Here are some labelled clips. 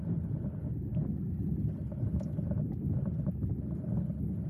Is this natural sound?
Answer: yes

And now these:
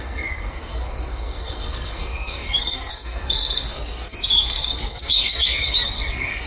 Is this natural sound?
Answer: no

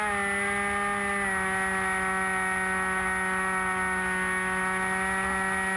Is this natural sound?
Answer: yes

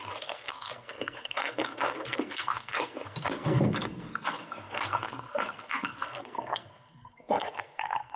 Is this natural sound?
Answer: no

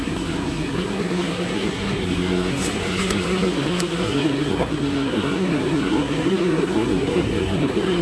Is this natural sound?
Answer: no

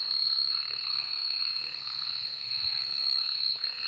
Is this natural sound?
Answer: no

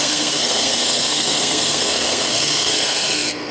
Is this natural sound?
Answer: no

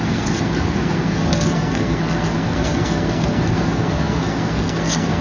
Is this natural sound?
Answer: no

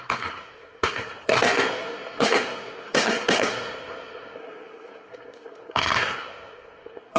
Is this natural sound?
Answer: no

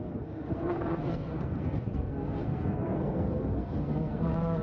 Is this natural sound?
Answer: no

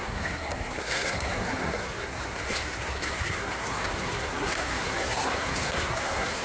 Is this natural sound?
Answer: no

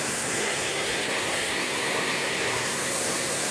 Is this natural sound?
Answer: no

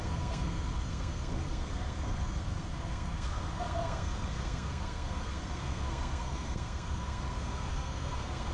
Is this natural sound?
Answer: no